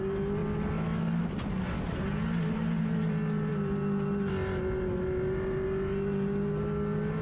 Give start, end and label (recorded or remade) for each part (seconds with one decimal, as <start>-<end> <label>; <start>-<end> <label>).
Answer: 0.0-7.2 recorded